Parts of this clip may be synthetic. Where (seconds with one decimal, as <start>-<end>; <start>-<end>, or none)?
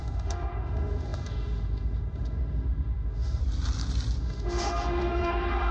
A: 0.0-3.4; 4.2-5.7